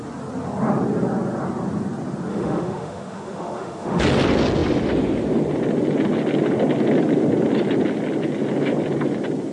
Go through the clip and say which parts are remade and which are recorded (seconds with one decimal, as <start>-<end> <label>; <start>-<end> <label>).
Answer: 0.0-2.3 recorded; 2.3-4.0 remade; 4.0-9.5 recorded